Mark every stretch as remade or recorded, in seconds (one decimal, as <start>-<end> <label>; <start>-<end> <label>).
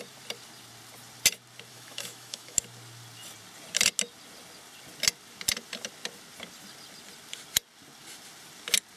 0.0-1.7 recorded; 1.7-2.6 remade; 2.6-9.0 recorded